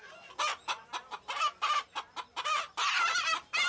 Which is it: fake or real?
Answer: real